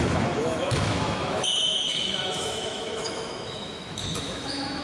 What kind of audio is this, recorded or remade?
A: remade